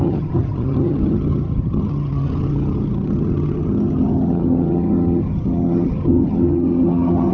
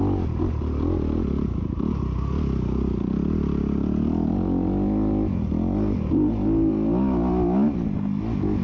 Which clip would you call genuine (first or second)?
second